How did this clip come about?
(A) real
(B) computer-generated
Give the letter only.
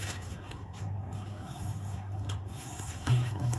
B